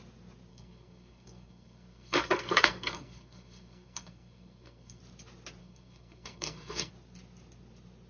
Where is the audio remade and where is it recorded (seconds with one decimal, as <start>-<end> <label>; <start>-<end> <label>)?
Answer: 0.0-0.5 recorded; 0.5-5.0 remade; 5.0-5.6 recorded; 5.6-6.9 remade; 6.9-8.1 recorded